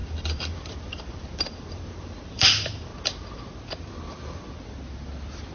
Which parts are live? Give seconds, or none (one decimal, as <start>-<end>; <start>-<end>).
2.9-5.5